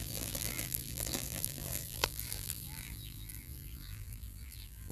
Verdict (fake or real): fake